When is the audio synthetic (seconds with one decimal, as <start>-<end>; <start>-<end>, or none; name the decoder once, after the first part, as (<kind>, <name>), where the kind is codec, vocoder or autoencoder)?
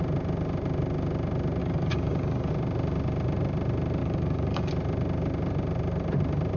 1.6-2.5 (codec, DAC); 4.0-4.7